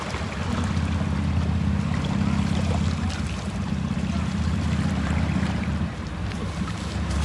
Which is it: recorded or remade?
remade